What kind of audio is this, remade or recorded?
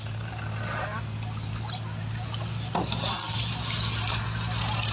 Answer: recorded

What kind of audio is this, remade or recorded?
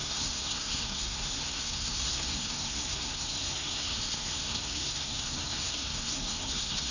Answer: remade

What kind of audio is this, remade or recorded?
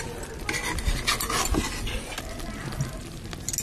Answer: recorded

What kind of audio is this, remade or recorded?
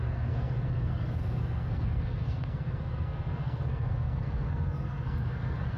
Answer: remade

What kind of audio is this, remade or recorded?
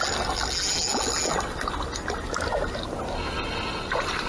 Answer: recorded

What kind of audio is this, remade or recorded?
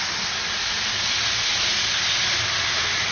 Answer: recorded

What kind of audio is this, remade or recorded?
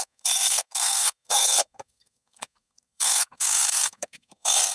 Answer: remade